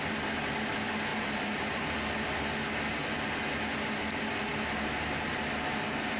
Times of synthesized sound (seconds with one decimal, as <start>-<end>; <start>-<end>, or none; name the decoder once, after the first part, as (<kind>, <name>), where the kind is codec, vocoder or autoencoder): 1.1-1.8 (vocoder, BigVGAN v2)